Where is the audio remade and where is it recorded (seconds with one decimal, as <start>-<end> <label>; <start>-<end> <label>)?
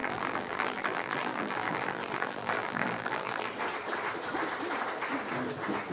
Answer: 0.0-3.5 remade; 3.5-5.9 recorded